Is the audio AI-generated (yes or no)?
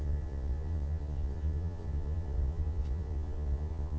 yes